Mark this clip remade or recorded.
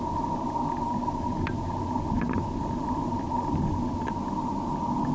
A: recorded